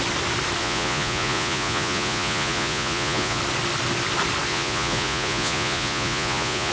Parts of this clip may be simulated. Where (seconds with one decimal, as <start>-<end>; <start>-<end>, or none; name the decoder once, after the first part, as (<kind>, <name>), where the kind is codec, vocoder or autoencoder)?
0.6-3.4 (vocoder, Vocos); 4.5-6.7